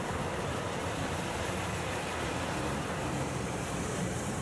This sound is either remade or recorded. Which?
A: remade